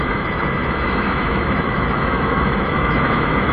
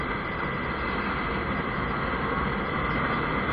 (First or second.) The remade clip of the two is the first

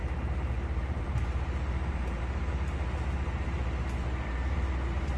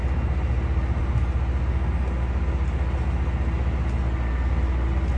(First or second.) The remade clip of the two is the first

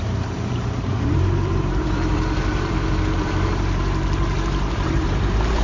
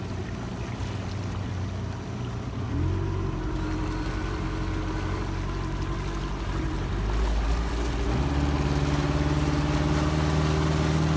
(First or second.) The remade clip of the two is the first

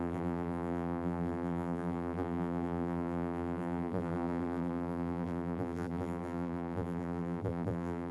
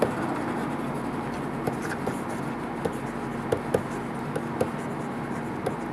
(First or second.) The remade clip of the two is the first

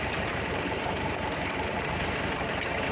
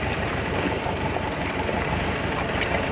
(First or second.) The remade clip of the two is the first